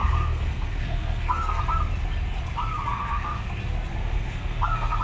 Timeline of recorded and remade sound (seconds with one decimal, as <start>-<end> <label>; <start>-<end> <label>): 0.0-1.6 remade; 1.6-2.9 recorded; 2.9-3.5 remade; 3.5-4.0 recorded; 4.0-5.0 remade